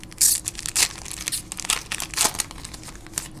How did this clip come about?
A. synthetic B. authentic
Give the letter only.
B